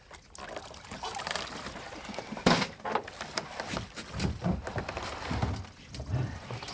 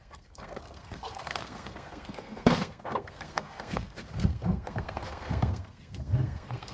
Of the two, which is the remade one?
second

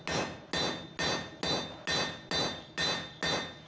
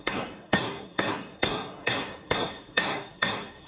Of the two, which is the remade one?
second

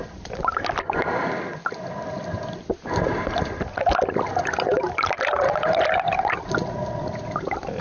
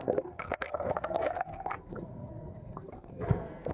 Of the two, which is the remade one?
second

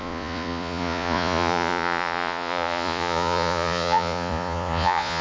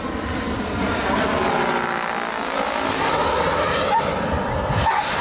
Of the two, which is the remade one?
first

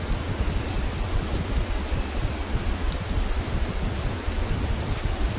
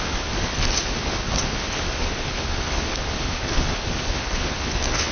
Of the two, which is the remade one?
second